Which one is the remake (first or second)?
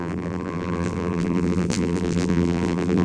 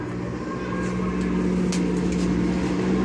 first